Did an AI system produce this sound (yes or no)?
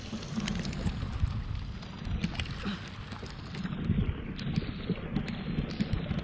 no